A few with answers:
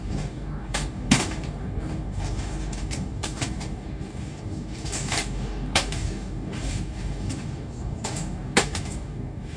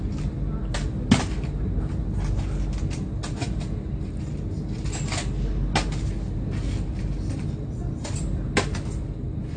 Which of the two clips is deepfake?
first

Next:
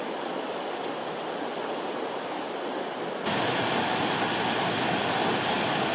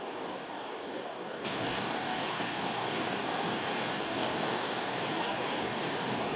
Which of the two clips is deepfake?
second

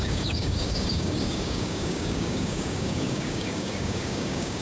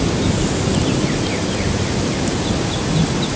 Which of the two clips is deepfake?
first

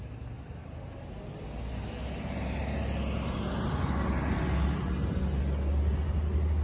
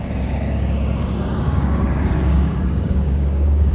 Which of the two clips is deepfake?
second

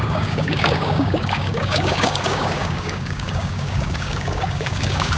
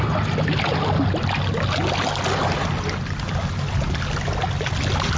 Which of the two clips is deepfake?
first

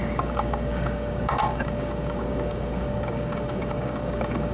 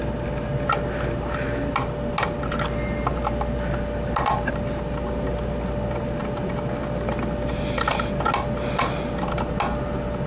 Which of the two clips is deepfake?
first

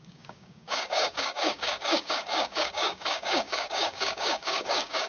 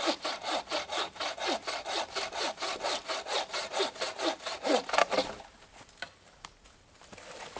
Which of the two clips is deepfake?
first